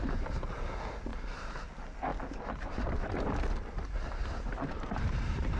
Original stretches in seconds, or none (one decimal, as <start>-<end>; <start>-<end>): 0.0-1.1; 1.6-4.2